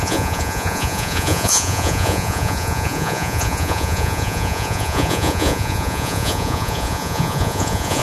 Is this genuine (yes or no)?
no